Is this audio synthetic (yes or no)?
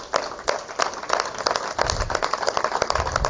no